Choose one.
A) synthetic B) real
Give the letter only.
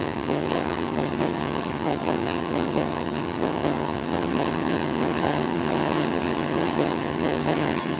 A